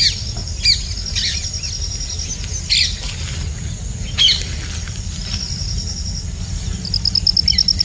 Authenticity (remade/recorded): recorded